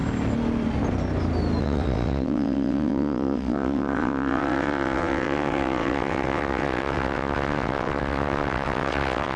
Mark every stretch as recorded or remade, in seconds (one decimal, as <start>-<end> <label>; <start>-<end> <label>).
0.0-1.6 recorded; 1.6-9.4 remade